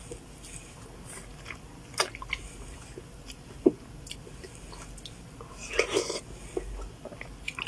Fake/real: real